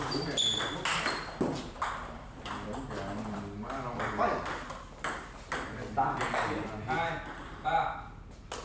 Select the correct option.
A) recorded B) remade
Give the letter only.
B